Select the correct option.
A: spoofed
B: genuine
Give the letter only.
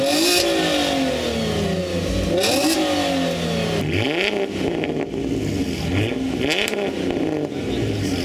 B